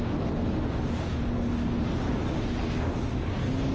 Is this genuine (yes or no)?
yes